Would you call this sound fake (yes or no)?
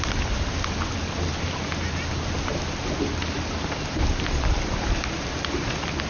no